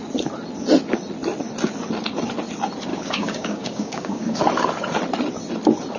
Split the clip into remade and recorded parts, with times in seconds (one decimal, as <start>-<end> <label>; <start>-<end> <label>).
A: 0.0-2.9 recorded; 2.9-4.4 remade; 4.4-6.0 recorded